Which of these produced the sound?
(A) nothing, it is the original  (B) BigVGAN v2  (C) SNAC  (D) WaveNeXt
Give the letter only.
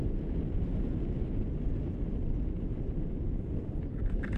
A